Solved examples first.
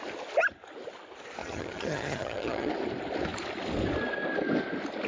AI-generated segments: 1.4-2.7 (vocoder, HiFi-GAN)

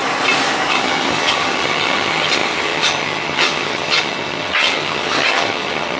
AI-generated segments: 0.7-6.0 (vocoder, HiFi-GAN)

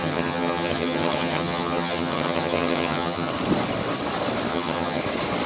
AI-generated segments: 0.0-3.3 (vocoder, HiFi-GAN); 4.5-5.0

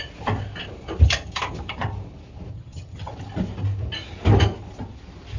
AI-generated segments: 2.5-3.1 (vocoder, HiFi-GAN)